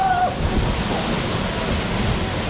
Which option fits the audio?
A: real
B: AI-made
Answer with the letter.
A